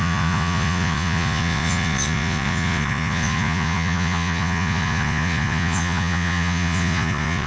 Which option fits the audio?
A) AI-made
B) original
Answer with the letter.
A